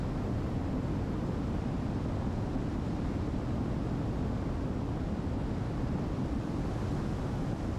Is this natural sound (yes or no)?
yes